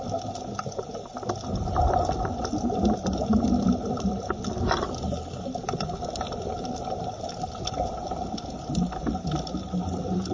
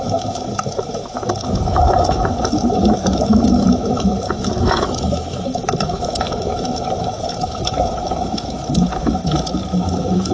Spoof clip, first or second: second